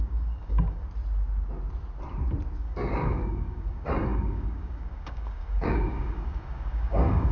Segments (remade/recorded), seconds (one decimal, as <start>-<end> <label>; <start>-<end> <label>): 0.0-0.8 remade; 0.8-2.6 recorded; 2.6-7.3 remade